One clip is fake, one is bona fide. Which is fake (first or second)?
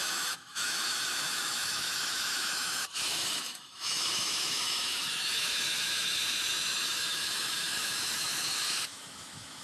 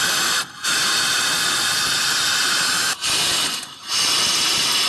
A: first